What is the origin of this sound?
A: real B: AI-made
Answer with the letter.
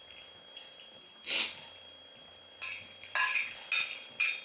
A